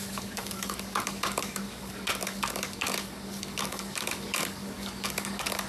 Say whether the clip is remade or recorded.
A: remade